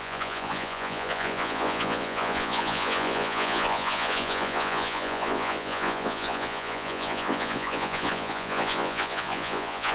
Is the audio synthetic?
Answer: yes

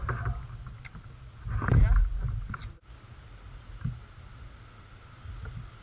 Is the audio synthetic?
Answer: no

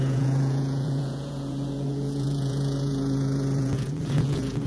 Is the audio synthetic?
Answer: yes